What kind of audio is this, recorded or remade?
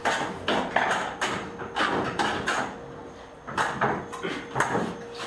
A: recorded